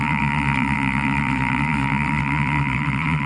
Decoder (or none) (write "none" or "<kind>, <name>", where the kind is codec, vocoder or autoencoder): vocoder, WaveNeXt